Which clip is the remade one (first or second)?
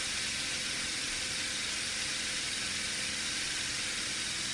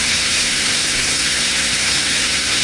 second